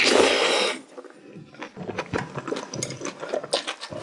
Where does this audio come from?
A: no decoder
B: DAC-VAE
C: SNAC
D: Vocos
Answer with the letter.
A